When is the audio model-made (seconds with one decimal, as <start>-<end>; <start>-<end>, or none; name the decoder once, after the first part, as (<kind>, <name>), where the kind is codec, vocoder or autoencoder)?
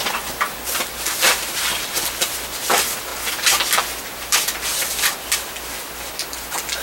none